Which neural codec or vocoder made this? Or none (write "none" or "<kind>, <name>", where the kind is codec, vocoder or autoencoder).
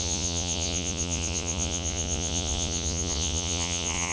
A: vocoder, Vocos